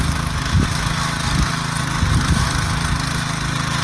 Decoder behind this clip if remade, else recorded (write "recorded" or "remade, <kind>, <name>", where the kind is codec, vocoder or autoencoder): recorded